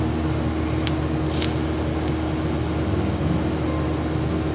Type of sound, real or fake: real